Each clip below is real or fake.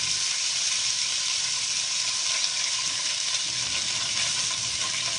real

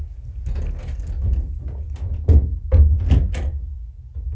real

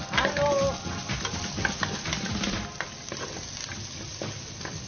real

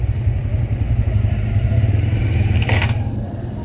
real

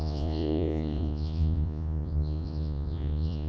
fake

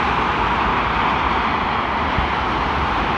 real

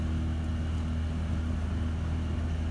real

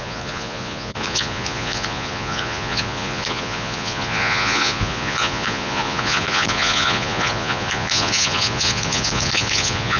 fake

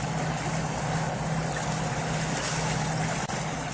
real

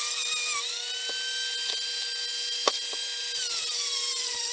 real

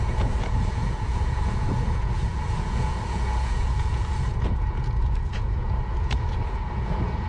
fake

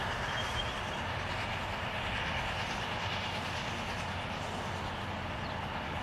real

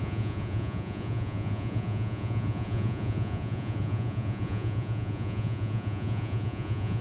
fake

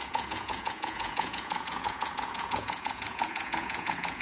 fake